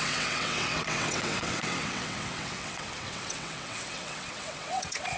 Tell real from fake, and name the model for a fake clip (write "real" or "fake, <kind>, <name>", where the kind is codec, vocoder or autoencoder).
fake, vocoder, WaveNeXt